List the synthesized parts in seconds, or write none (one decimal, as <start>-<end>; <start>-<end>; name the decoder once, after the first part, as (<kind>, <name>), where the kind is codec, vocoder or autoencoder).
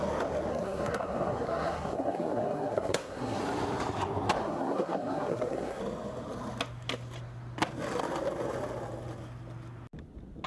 0.5-3.4 (codec, SNAC); 4.4-5.8